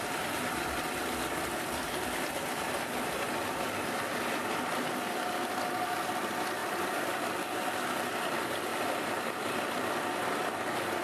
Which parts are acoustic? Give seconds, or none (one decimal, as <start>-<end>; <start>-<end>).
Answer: none